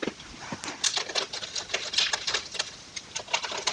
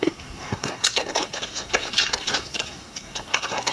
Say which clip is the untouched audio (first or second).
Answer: first